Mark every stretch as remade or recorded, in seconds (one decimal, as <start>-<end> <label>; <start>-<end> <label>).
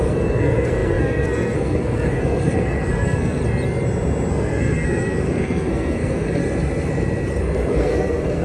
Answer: 0.0-3.4 remade; 3.4-4.3 recorded; 4.3-6.4 remade; 6.4-7.7 recorded; 7.7-8.4 remade